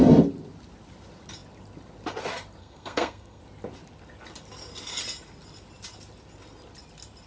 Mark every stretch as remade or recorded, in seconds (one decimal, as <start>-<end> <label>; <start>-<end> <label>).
0.0-2.6 recorded; 2.6-3.4 remade; 3.4-7.3 recorded